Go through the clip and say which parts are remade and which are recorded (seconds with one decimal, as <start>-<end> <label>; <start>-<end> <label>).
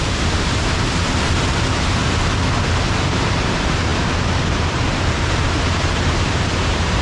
0.0-2.0 remade; 2.0-2.9 recorded; 2.9-7.0 remade